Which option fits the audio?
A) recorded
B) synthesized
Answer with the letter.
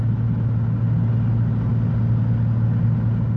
A